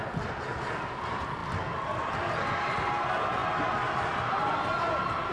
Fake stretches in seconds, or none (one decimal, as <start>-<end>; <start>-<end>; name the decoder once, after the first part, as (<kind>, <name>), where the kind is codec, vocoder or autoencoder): none